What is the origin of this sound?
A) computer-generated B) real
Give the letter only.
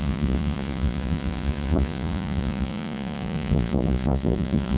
A